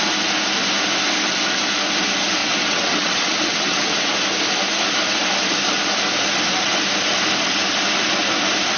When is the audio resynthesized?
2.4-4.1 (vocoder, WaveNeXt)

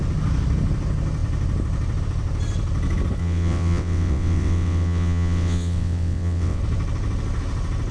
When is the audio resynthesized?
3.2-6.6 (vocoder, WaveNeXt)

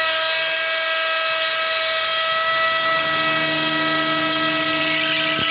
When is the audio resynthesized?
none

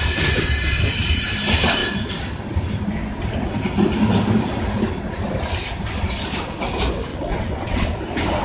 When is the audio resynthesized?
7.1-7.9 (vocoder, WaveNeXt)

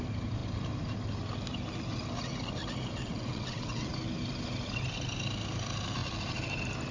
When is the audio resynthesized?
3.0-3.9 (vocoder, WaveNeXt)

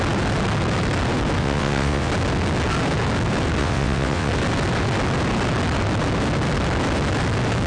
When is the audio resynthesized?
1.4-2.1 (vocoder, WaveNeXt); 3.6-4.3

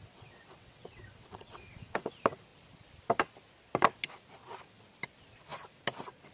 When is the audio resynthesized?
0.0-2.1 (vocoder, WaveNeXt)